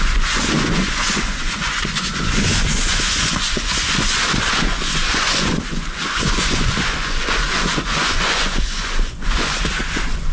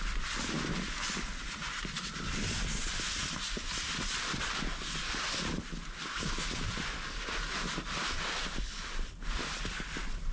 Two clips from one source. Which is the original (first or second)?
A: second